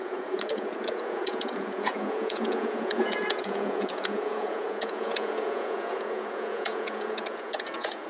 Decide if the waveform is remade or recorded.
remade